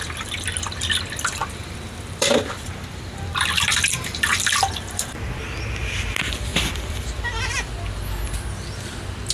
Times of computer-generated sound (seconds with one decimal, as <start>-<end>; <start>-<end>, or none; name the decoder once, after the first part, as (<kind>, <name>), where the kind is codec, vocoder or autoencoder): 1.4-5.4 (vocoder, BigVGAN v2); 6.5-7.2